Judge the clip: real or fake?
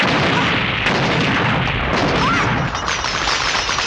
real